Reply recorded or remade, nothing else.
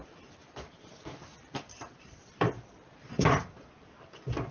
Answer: recorded